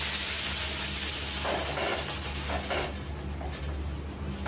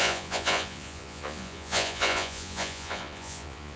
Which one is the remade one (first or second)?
second